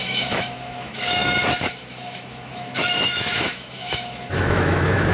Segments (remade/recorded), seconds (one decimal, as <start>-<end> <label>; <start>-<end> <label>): 0.0-5.1 remade

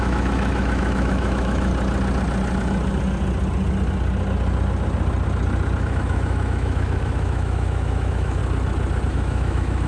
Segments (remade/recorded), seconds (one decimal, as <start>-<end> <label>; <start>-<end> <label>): 0.0-1.7 remade; 1.7-5.8 recorded; 5.8-8.4 remade; 8.4-9.1 recorded; 9.1-9.9 remade

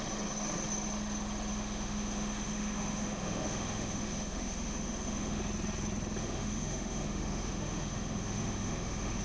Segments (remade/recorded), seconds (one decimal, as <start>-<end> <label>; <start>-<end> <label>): 0.0-1.5 recorded; 1.5-5.4 remade; 5.4-6.2 recorded; 6.2-9.2 remade

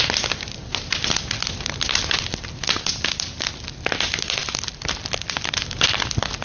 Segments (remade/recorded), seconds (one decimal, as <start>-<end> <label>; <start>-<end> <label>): 0.0-6.4 recorded

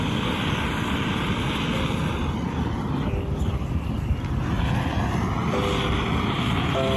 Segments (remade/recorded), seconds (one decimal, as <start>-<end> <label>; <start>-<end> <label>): 0.0-7.0 recorded